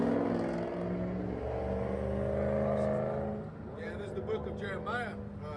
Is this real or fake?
real